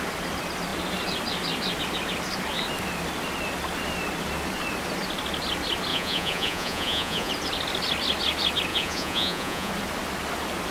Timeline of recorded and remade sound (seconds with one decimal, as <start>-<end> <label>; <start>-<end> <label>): 0.0-5.9 recorded; 5.9-7.3 remade; 7.3-8.7 recorded; 8.7-9.7 remade; 9.7-10.7 recorded